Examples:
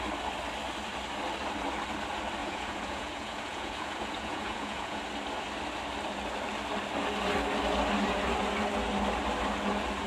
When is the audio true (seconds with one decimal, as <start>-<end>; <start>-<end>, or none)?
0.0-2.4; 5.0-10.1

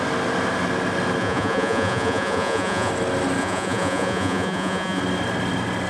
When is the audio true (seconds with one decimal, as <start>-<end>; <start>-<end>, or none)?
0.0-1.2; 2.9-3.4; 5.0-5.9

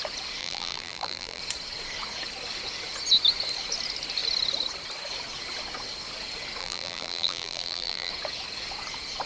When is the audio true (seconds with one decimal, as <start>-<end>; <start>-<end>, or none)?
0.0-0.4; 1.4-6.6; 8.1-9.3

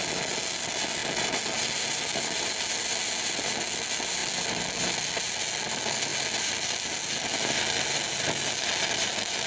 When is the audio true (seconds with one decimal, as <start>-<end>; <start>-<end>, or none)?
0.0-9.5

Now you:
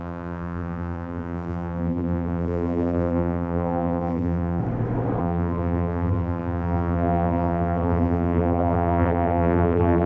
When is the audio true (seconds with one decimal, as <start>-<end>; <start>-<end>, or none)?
4.6-5.2

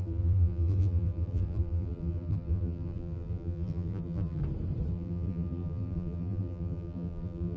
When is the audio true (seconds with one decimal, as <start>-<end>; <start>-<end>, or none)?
4.4-4.9

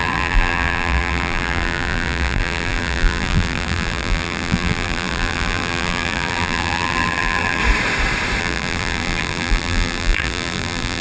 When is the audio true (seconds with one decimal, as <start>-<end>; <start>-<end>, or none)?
7.6-8.4